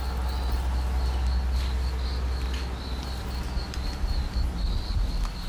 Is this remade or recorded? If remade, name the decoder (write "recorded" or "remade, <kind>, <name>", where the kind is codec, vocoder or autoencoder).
recorded